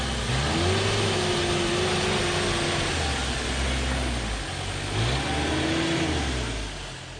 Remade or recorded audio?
recorded